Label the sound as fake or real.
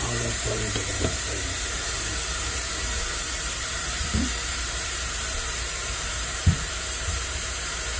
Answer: fake